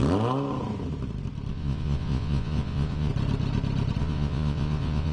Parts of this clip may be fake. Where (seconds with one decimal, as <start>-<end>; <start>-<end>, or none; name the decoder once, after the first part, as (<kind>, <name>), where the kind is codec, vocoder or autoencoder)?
1.5-3.1 (vocoder, Vocos); 4.0-5.1